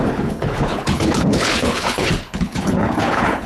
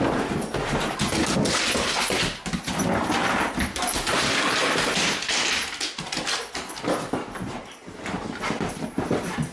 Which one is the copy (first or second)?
first